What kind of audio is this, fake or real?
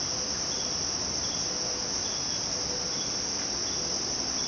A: real